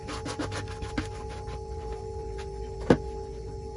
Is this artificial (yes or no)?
no